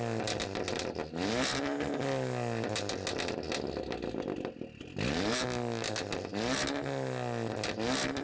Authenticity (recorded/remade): recorded